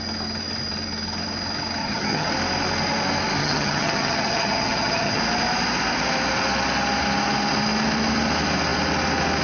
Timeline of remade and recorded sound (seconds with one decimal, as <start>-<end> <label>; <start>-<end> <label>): 0.0-1.8 recorded; 1.8-2.3 remade; 2.3-3.4 recorded; 3.4-5.2 remade; 5.2-9.4 recorded